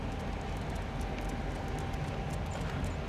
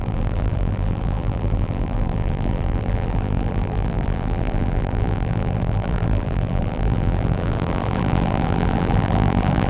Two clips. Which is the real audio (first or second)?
first